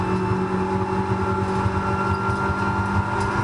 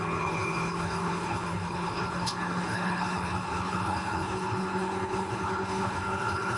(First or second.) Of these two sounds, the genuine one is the first